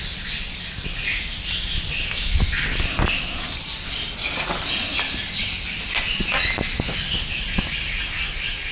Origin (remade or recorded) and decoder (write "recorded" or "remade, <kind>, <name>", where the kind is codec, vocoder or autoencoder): recorded